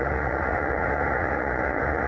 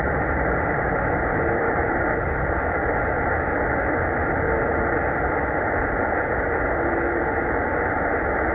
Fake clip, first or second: first